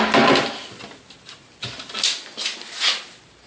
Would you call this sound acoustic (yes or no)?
yes